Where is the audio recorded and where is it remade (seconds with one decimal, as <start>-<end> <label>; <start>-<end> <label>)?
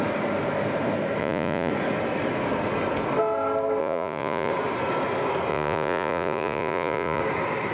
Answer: 0.0-1.2 recorded; 1.2-1.7 remade; 1.7-3.8 recorded; 3.8-4.5 remade; 4.5-5.5 recorded; 5.5-7.2 remade; 7.2-7.7 recorded